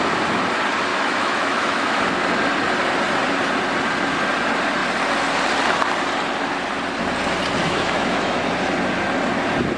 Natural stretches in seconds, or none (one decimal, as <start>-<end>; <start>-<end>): 0.0-0.9; 2.0-7.6; 8.5-9.8